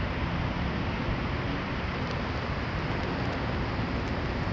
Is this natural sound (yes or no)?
yes